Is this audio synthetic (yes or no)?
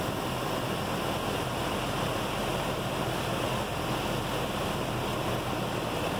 no